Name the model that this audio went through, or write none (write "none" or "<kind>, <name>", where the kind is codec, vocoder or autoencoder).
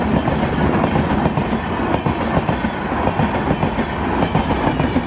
none